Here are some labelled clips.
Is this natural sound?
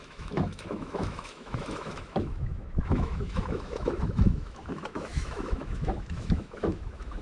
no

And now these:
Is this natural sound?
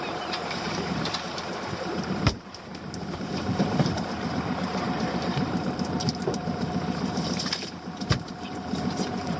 no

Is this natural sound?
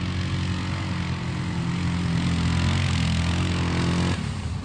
yes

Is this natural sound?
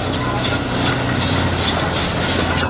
yes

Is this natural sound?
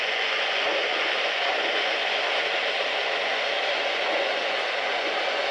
no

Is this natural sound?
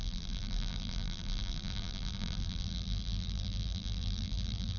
no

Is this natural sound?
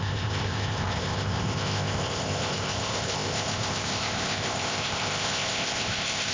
no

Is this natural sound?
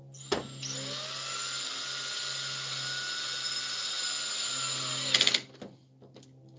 yes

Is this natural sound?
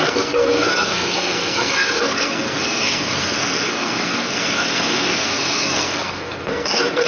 no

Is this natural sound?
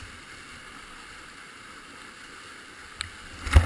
yes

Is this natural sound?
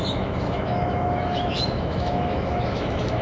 no